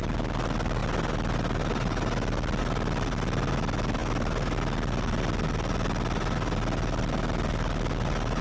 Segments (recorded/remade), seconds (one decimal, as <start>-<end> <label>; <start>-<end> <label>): 0.0-8.4 recorded